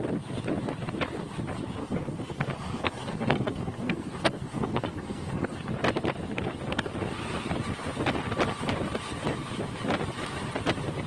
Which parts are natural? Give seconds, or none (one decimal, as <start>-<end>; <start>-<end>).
0.0-1.8; 5.7-11.1